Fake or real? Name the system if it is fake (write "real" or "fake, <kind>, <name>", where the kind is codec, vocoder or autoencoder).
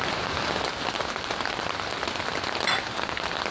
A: real